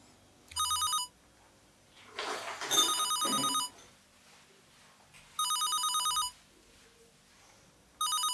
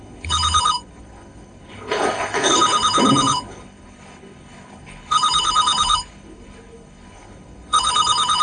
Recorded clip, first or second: first